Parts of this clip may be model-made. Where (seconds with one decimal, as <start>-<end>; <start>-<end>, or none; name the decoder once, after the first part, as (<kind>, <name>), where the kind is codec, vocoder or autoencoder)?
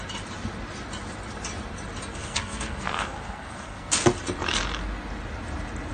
2.1-3.9 (codec, SNAC)